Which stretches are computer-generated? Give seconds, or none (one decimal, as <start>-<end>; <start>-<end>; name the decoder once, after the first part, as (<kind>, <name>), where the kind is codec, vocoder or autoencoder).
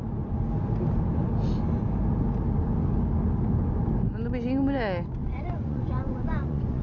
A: 5.2-6.8 (vocoder, Vocos)